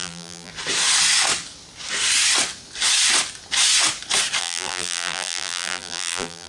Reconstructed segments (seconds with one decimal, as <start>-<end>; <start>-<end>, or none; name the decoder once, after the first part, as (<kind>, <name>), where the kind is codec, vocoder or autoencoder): 0.0-0.5 (vocoder, BigVGAN v2); 4.4-6.5

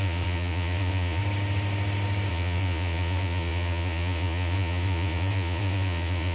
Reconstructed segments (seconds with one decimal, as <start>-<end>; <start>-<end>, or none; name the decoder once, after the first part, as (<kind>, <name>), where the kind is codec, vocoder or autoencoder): 0.0-1.2 (vocoder, Vocos); 2.3-6.3

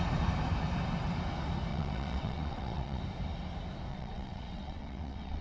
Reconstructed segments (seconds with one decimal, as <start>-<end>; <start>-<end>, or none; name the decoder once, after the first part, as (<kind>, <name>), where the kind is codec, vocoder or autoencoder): 1.7-3.0 (vocoder, WaveNeXt); 3.9-5.4

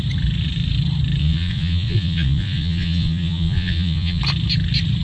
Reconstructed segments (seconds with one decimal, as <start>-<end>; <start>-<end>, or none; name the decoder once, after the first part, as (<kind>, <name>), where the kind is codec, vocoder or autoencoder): 1.2-4.2 (vocoder, Vocos)